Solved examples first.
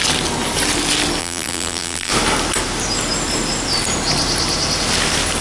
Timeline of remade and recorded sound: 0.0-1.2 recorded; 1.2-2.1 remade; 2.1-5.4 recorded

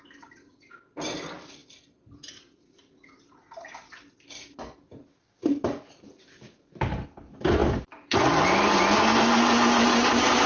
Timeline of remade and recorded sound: 0.0-7.6 recorded; 7.6-8.2 remade; 8.2-10.5 recorded

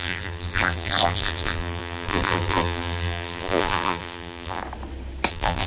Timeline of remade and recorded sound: 0.0-4.6 remade; 4.6-5.3 recorded; 5.3-5.7 remade

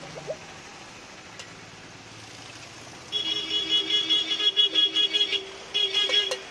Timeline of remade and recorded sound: 0.0-6.5 recorded

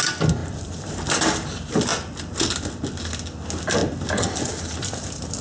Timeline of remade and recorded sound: 0.0-0.4 recorded; 0.4-0.9 remade; 0.9-5.4 recorded

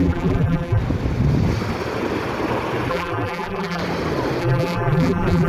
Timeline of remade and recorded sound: 0.0-0.8 remade; 0.8-2.9 recorded; 2.9-3.8 remade; 3.8-4.4 recorded; 4.4-5.5 remade

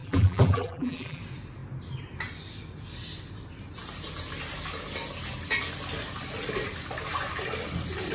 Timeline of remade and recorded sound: 0.0-1.2 remade; 1.2-8.1 recorded